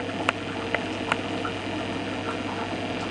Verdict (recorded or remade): recorded